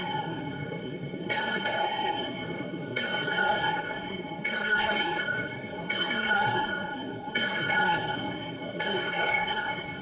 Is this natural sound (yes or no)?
no